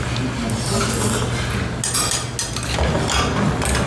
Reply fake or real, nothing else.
real